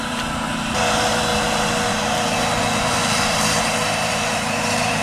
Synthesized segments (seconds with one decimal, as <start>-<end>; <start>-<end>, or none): 0.0-5.0